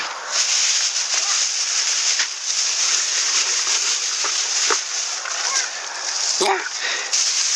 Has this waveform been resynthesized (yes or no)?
no